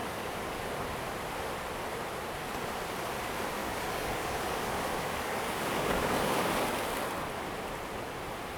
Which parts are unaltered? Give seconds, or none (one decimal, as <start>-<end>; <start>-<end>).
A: 0.6-3.6; 6.5-8.6